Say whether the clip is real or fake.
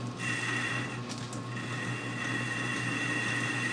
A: real